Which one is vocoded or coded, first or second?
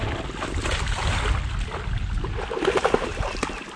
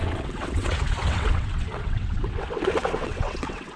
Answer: second